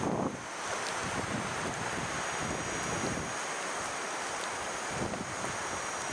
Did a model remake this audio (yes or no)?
no